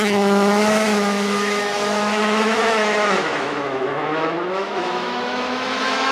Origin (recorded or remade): remade